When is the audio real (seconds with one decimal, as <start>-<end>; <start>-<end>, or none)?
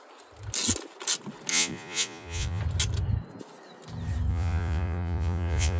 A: 0.0-1.5; 2.6-4.3